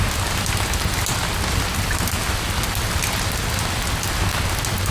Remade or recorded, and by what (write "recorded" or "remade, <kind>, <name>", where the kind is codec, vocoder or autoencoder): recorded